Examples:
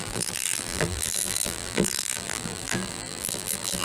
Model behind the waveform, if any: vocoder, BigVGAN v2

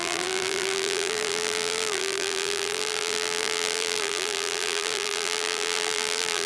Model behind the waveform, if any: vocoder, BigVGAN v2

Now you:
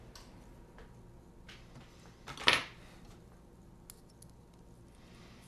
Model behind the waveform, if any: none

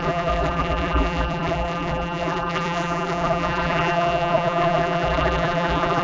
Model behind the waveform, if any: vocoder, BigVGAN v2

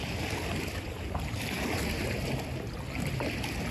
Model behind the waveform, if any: none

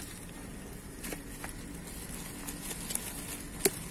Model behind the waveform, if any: none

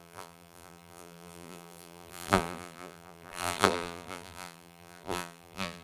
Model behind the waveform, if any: vocoder, BigVGAN v2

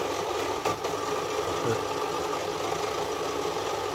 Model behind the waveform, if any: none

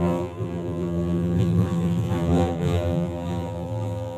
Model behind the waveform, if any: vocoder, BigVGAN v2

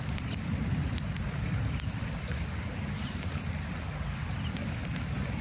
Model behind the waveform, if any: vocoder, BigVGAN v2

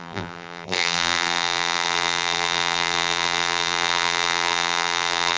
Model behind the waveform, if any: vocoder, BigVGAN v2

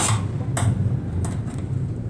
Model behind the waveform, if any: none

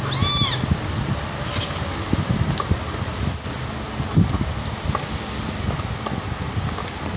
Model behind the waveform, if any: none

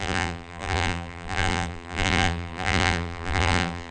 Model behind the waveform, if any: vocoder, BigVGAN v2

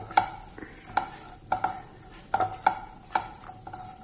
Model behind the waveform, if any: none